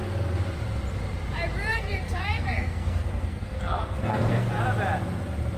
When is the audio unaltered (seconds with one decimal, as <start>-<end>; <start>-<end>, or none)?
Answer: 0.0-1.7; 4.6-5.6